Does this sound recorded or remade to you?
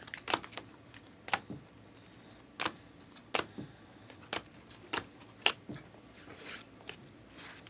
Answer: recorded